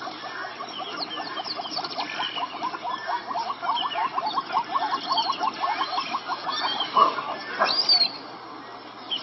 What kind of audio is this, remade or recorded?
recorded